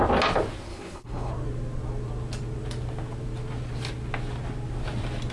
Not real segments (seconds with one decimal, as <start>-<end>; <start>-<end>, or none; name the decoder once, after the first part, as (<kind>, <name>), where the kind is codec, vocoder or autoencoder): 0.7-1.3 (codec, HILCodec)